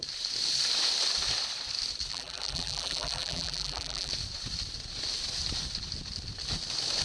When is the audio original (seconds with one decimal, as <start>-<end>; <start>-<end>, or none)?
0.0-2.1; 4.1-7.0